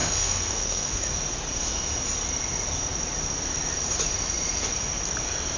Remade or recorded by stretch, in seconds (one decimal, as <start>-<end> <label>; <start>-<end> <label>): 0.0-1.0 remade; 1.0-5.6 recorded